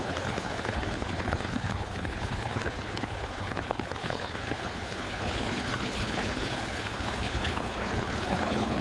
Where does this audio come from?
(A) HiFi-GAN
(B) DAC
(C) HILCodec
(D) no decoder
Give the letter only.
C